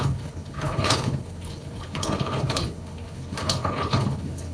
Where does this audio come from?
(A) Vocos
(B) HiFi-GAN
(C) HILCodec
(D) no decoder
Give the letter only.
C